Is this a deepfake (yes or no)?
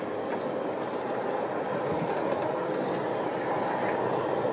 no